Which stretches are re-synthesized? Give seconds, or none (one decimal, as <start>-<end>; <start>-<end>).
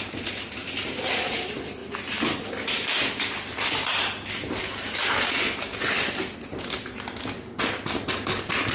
none